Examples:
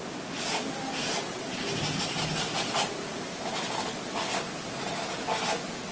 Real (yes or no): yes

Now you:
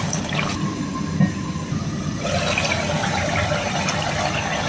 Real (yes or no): yes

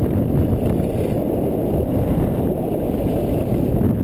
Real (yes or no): yes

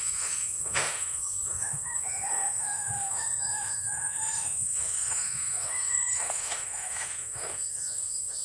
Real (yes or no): no